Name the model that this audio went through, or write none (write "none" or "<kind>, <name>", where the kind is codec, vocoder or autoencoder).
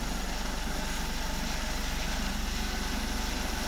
none